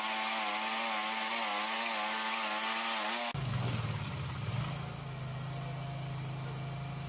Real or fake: real